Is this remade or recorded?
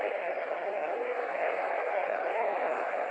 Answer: remade